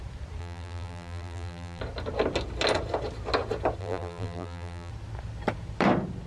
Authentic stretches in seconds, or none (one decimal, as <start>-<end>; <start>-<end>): 0.0-0.4; 1.8-3.8; 4.9-6.3